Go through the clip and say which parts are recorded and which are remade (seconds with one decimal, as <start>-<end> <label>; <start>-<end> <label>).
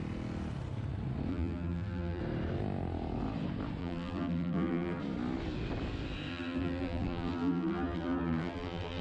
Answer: 0.0-1.3 recorded; 1.3-2.2 remade; 2.2-3.8 recorded; 3.8-5.0 remade; 5.0-6.3 recorded; 6.3-9.0 remade